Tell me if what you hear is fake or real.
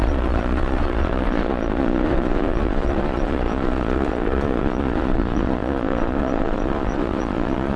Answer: fake